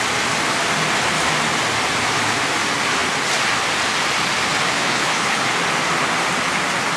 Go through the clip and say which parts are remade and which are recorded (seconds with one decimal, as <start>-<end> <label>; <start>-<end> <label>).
0.0-4.7 recorded; 4.7-5.4 remade; 5.4-7.0 recorded